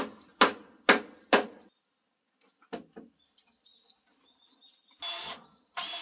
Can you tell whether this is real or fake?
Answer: real